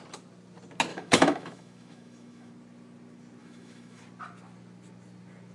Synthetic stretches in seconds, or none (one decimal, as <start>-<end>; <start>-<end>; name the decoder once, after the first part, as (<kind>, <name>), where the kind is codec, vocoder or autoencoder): 0.9-2.5 (autoencoder, DAC-VAE); 3.4-4.0